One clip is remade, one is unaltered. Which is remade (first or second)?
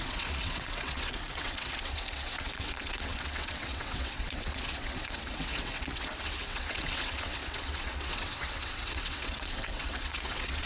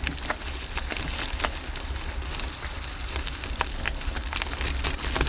first